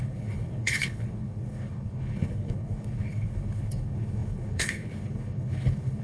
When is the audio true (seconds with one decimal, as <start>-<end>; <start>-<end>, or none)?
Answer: none